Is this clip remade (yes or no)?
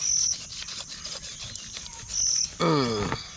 no